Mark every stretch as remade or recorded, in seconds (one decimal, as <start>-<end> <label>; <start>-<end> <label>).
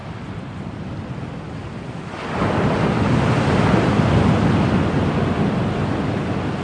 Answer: 0.0-0.6 remade; 0.6-6.6 recorded